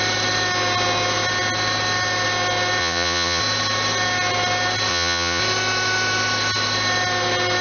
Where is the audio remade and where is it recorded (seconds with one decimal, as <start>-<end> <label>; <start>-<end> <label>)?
0.0-2.8 recorded; 2.8-3.4 remade; 3.4-4.9 recorded; 4.9-5.4 remade; 5.4-7.6 recorded